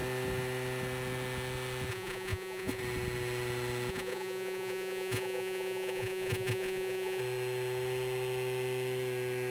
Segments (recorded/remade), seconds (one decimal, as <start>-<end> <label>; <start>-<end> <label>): 0.0-1.9 recorded; 1.9-2.8 remade; 2.8-3.9 recorded; 3.9-7.2 remade; 7.2-9.5 recorded